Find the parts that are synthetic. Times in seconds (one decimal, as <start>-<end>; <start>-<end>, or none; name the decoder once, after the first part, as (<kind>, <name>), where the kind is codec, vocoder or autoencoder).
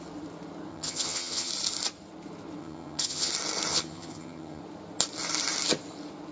0.7-1.5 (vocoder, HiFi-GAN); 2.6-3.3; 3.7-4.6